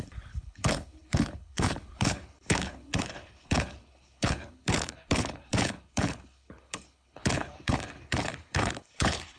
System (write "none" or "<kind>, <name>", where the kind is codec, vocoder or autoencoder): codec, HILCodec